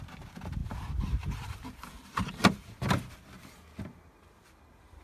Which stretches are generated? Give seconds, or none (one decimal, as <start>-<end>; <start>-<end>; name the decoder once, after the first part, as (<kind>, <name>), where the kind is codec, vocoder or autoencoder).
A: 0.6-3.1 (vocoder, BigVGAN v2)